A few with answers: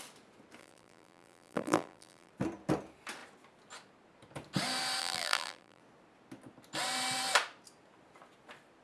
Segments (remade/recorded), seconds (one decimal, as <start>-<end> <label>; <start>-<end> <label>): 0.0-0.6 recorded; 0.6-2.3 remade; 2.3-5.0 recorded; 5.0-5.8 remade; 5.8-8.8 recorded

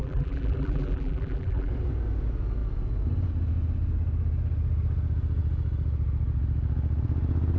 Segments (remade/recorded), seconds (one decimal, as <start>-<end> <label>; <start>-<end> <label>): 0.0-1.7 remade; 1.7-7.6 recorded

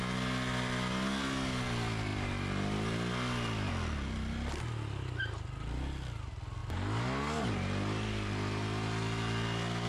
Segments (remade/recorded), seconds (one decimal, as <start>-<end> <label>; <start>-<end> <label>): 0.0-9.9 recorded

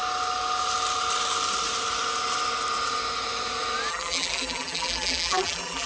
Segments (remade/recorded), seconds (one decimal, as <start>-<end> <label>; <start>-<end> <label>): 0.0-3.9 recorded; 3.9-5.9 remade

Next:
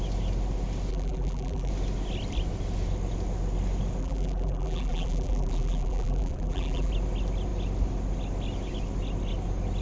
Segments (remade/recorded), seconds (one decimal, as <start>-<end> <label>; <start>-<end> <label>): 0.0-0.9 recorded; 0.9-1.7 remade; 1.7-4.0 recorded; 4.0-6.9 remade; 6.9-9.8 recorded

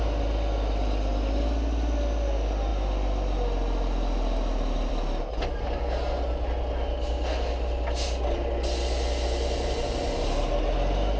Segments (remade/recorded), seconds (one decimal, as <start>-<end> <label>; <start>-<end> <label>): 0.0-11.2 recorded